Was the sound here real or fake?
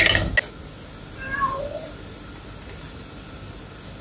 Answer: real